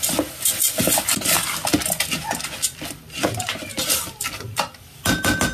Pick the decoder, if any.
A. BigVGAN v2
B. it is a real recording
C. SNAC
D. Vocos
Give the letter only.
B